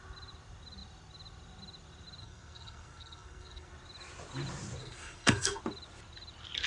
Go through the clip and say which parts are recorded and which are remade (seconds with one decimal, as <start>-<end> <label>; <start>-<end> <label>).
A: 0.0-2.2 recorded; 2.2-3.7 remade; 3.7-4.8 recorded; 4.8-5.6 remade; 5.6-6.7 recorded